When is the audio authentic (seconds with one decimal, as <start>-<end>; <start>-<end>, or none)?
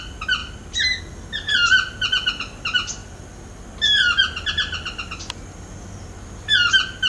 0.0-7.1